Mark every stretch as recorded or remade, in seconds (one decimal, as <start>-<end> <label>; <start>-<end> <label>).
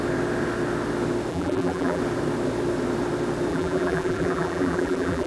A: 0.0-1.3 recorded; 1.3-2.0 remade; 2.0-3.5 recorded; 3.5-5.3 remade